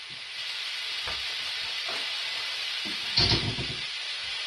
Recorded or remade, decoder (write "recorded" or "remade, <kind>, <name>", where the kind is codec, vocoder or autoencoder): recorded